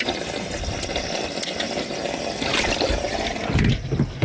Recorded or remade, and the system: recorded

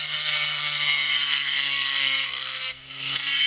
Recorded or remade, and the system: remade, codec, SNAC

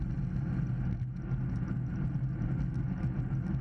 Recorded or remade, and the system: recorded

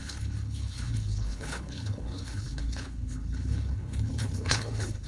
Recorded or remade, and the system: remade, codec, HILCodec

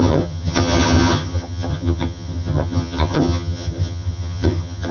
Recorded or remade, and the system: remade, vocoder, HiFi-GAN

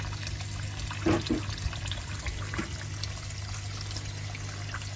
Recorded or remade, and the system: recorded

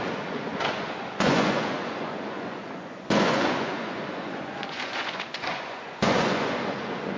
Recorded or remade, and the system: remade, vocoder, Vocos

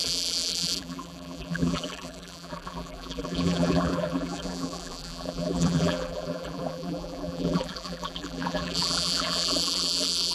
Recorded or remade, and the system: remade, vocoder, BigVGAN v2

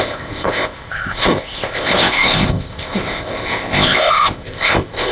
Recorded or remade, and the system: remade, codec, ZipCodec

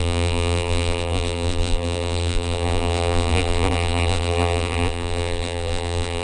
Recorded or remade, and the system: remade, vocoder, BigVGAN v2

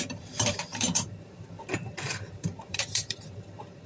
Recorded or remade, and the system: remade, vocoder, BigVGAN v2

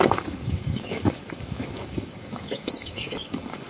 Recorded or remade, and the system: remade, codec, DAC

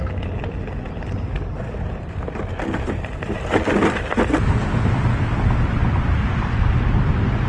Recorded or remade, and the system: recorded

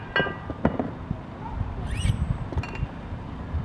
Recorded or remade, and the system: recorded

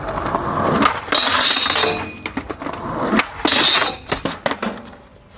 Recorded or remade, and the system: recorded